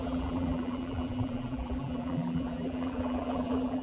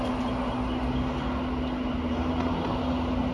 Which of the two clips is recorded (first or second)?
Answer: second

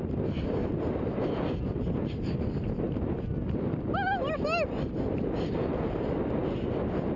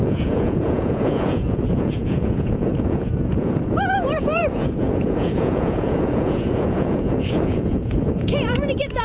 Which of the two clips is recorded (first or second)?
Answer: first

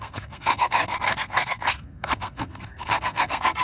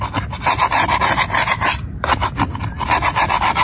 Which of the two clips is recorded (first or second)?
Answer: second